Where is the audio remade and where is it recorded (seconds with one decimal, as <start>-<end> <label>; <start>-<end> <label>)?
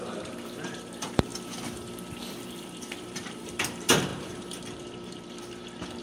0.0-1.3 remade; 1.3-2.3 recorded; 2.3-6.0 remade